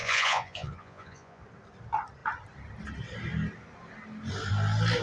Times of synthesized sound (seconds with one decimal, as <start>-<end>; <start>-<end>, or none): 0.0-1.4